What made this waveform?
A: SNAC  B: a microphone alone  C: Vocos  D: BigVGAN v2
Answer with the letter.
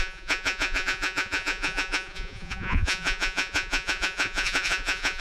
C